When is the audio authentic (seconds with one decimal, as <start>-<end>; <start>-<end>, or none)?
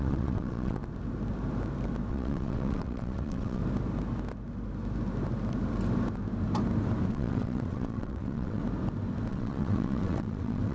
0.8-2.1; 3.6-7.1; 8.6-9.3